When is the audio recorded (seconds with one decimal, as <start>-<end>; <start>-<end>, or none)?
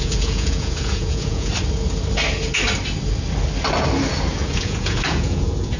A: 1.5-4.3